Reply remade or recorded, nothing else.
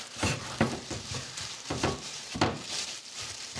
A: remade